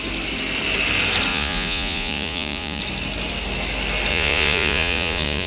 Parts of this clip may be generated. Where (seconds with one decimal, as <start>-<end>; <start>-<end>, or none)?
1.3-2.8; 4.1-5.5